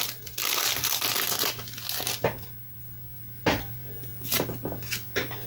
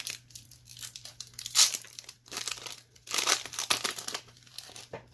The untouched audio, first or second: first